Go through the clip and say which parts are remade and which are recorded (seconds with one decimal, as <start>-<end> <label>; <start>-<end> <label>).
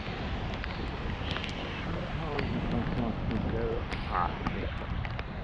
0.0-1.4 recorded; 1.4-2.9 remade; 2.9-5.4 recorded